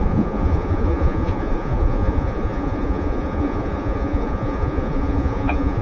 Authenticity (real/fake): fake